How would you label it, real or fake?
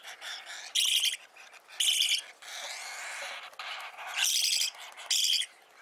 real